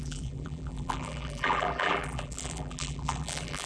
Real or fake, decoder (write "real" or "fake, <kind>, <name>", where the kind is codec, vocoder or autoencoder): fake, vocoder, BigVGAN v2